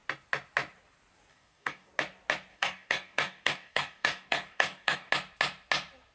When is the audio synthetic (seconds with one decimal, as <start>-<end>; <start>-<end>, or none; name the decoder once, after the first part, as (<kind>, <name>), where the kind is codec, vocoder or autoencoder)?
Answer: 1.3-1.9 (codec, DAC); 2.5-5.1